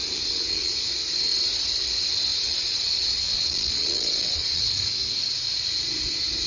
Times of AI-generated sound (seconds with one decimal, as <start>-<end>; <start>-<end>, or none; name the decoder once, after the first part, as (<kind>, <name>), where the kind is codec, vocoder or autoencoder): 0.0-0.9 (vocoder, Vocos); 2.3-4.6